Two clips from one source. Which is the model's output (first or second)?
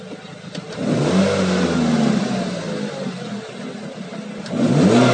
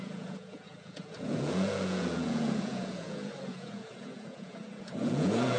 second